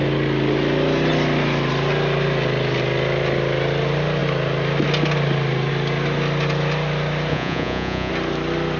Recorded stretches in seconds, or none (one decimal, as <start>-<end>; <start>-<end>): 0.0-7.3; 8.1-8.8